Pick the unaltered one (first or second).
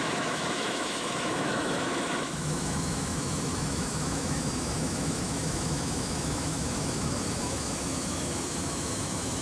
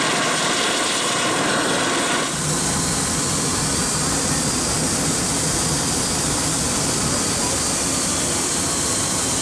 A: second